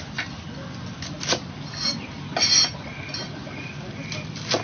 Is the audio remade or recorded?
recorded